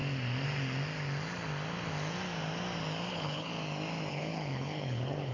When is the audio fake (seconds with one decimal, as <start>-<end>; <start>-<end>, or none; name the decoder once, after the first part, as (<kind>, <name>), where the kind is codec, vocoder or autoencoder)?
3.1-3.5 (codec, HILCodec); 4.1-5.3